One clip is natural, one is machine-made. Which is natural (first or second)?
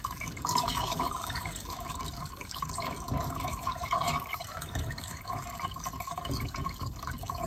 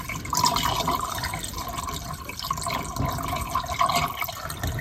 second